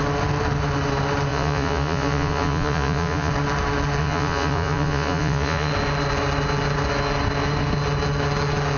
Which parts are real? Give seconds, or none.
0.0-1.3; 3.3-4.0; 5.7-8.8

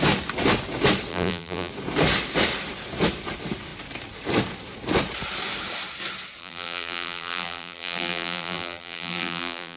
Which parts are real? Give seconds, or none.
0.0-1.1; 1.7-6.4

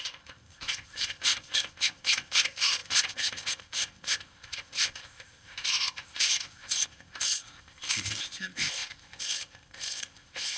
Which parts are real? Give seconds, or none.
none

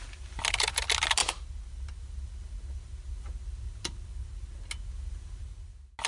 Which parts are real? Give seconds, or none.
0.0-6.1

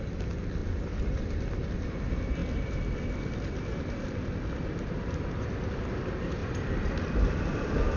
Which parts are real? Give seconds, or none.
0.0-0.6; 1.2-6.4; 7.0-8.0